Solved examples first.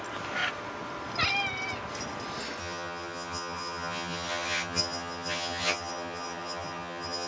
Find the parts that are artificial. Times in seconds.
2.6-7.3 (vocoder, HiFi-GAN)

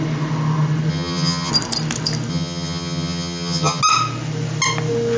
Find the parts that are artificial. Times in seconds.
0.9-1.5 (vocoder, HiFi-GAN); 2.3-3.8